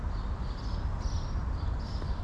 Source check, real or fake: real